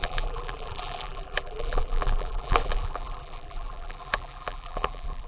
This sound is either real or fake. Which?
fake